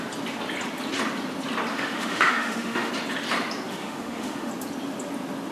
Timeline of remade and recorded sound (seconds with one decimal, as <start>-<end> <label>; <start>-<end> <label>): 0.0-1.7 recorded; 1.7-2.9 remade; 2.9-3.7 recorded; 3.7-4.5 remade; 4.5-5.5 recorded